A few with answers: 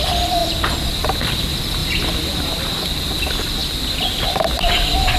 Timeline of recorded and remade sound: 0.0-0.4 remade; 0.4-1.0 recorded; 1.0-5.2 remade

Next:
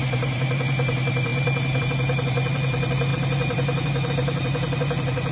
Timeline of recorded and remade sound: 0.0-5.3 remade